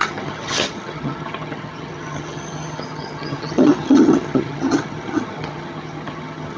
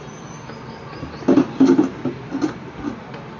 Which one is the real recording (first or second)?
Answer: second